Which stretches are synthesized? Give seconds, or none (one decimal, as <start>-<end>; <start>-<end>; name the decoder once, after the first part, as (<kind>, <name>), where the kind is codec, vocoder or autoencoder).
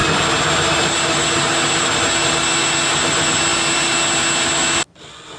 none